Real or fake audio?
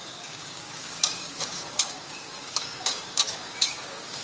fake